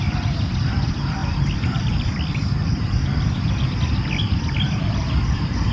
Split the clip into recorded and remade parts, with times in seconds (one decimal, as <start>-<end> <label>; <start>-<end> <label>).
0.0-5.7 recorded